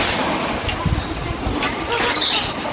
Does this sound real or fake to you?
real